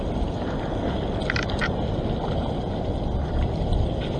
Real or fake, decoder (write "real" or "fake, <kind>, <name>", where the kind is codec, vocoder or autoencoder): real